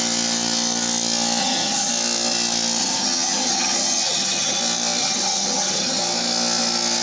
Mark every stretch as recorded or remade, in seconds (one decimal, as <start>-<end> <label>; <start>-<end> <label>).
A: 0.0-1.4 recorded; 1.4-1.9 remade; 1.9-2.8 recorded; 2.8-4.6 remade; 4.6-5.0 recorded; 5.0-6.0 remade; 6.0-7.0 recorded